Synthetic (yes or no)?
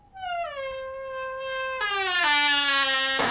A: no